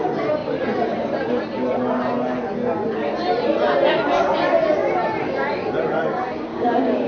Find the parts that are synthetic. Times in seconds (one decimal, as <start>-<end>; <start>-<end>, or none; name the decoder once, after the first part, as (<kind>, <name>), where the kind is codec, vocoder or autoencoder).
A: 6.5-7.1 (codec, DAC)